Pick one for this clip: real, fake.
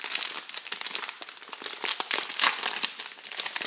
real